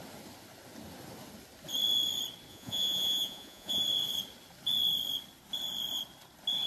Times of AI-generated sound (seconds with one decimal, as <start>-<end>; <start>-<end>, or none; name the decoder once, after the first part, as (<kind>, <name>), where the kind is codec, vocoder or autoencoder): 2.5-3.8 (vocoder, Vocos)